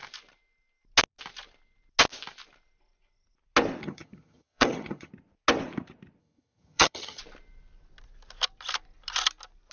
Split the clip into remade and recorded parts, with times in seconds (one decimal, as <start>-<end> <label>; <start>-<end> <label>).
0.0-3.8 recorded; 3.8-5.1 remade; 5.1-6.2 recorded; 6.2-7.2 remade; 7.2-9.7 recorded

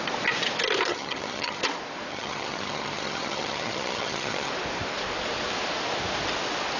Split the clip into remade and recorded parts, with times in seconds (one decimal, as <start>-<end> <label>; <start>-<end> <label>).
0.0-0.9 recorded; 0.9-1.6 remade; 1.6-2.1 recorded; 2.1-4.5 remade; 4.5-6.8 recorded

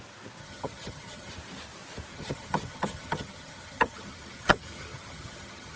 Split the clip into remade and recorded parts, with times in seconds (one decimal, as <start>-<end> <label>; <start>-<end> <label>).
0.0-0.4 recorded; 0.4-1.3 remade; 1.3-2.1 recorded; 2.1-5.8 remade

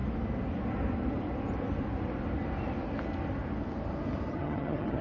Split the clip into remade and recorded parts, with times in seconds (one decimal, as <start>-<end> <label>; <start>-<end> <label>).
0.0-4.3 recorded; 4.3-5.0 remade

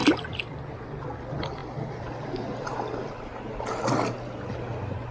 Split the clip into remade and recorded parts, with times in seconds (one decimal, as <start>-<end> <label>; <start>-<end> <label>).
0.0-5.1 recorded

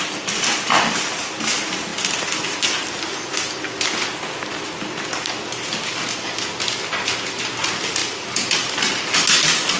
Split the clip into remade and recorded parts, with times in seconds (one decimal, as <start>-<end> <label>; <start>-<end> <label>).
0.0-9.8 recorded

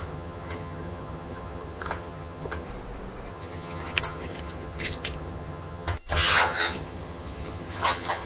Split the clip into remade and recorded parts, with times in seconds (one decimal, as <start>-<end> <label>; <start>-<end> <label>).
0.0-2.7 remade; 2.7-3.3 recorded; 3.3-8.3 remade